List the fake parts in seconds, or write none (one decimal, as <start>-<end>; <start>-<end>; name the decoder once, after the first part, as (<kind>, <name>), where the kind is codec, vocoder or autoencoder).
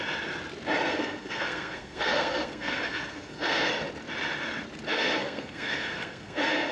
0.9-3.7 (codec, SNAC); 4.9-6.7